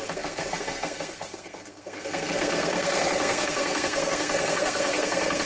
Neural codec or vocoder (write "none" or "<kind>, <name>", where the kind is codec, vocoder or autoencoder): codec, SNAC